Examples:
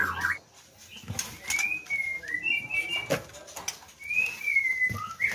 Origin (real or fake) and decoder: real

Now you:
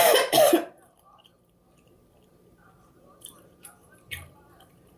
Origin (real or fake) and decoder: fake, vocoder, BigVGAN v2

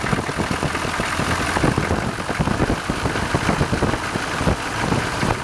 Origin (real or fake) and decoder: real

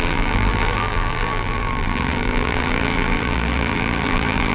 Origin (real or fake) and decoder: fake, vocoder, BigVGAN v2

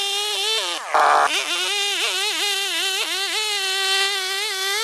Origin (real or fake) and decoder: real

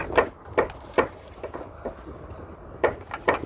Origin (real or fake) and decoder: real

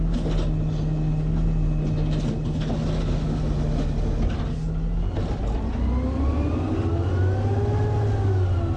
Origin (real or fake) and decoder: real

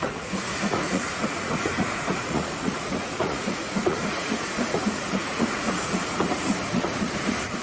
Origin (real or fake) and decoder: fake, vocoder, Vocos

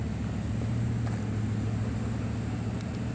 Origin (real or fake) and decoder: real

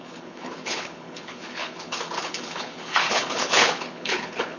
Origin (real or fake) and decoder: fake, codec, HILCodec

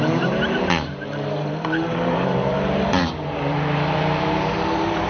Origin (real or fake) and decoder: fake, vocoder, BigVGAN v2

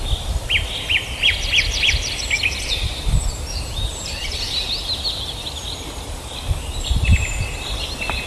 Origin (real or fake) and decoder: real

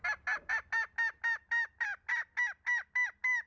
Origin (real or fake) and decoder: real